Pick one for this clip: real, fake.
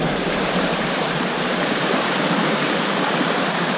fake